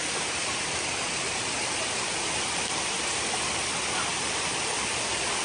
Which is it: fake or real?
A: real